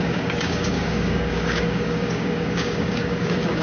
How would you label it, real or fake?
fake